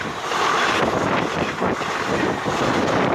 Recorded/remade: recorded